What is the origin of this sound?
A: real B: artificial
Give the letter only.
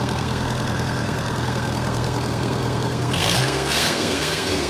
B